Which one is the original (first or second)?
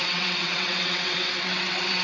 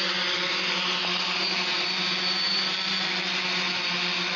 second